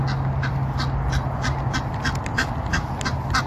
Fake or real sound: real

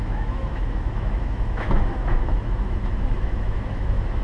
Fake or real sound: fake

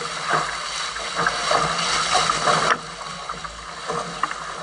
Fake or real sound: real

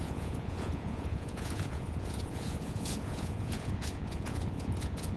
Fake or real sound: fake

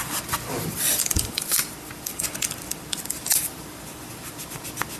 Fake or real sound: fake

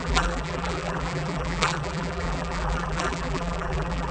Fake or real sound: fake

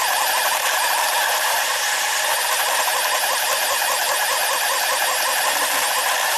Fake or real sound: real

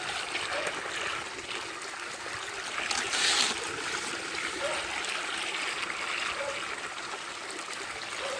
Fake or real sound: real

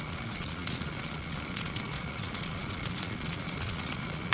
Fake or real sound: fake